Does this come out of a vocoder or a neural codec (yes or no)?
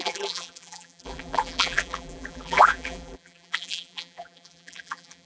yes